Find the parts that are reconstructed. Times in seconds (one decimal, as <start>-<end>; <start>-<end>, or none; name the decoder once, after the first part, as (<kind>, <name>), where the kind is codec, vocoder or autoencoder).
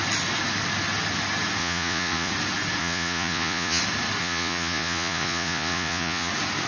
1.6-2.3 (vocoder, Vocos); 2.8-3.8; 4.2-6.3